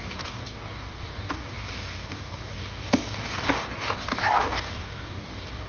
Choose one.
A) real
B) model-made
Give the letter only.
B